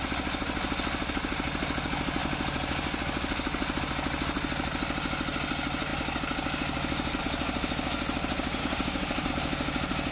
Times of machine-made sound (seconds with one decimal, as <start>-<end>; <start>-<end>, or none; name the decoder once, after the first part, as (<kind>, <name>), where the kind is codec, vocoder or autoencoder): 8.6-9.3 (codec, DAC)